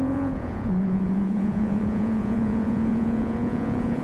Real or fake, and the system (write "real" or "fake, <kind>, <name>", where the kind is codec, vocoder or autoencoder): fake, vocoder, Vocos